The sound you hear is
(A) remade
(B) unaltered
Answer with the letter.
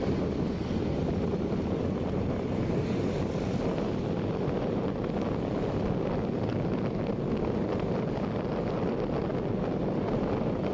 B